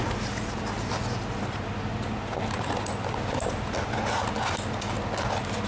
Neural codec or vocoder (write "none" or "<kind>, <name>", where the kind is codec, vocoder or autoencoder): none